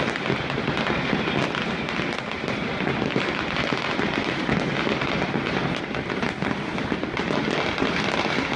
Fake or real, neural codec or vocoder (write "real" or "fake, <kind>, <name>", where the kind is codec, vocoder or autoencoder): fake, vocoder, BigVGAN v2